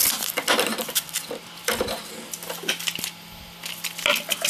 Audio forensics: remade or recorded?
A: recorded